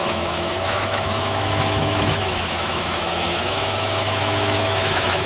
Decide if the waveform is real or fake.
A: fake